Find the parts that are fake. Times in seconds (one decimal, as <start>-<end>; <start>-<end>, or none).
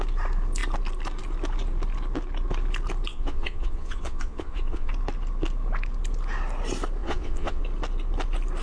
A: 3.1-4.9; 7.0-7.6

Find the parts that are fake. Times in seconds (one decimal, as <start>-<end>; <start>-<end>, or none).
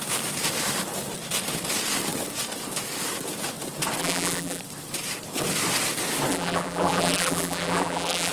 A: 4.0-4.6; 6.3-8.3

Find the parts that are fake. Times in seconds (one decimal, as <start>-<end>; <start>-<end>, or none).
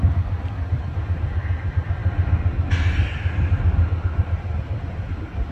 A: none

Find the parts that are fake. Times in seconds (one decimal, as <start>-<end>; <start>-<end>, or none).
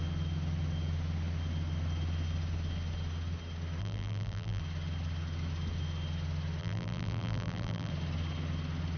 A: 3.8-4.6; 6.6-7.9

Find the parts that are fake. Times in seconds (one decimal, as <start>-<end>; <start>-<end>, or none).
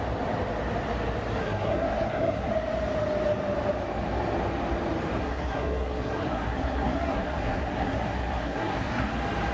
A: 1.4-2.5; 5.2-9.1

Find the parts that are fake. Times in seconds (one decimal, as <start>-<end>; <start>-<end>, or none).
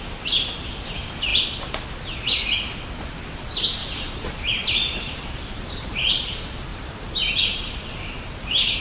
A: 3.8-6.1; 6.7-8.8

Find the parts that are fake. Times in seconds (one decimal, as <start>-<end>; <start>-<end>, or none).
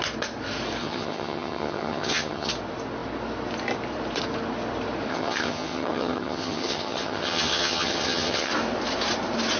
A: 0.8-2.5; 5.1-8.5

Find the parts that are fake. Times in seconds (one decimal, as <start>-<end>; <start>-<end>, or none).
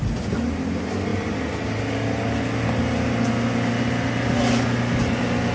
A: none